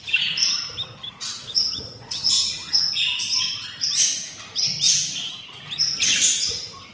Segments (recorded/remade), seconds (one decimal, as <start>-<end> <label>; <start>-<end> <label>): 0.0-0.4 remade; 0.4-1.1 recorded; 1.1-2.6 remade; 2.6-6.9 recorded